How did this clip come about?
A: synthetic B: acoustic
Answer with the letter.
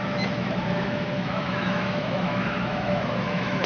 A